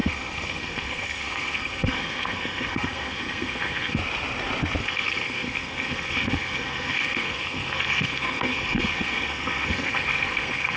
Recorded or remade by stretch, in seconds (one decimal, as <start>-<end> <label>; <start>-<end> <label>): 0.0-4.0 remade; 4.0-4.8 recorded; 4.8-10.8 remade